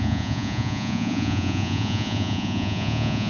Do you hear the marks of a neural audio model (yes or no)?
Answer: yes